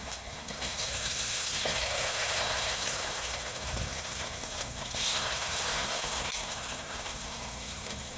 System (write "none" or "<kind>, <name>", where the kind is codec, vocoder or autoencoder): codec, SNAC